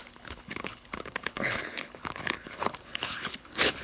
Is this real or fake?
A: fake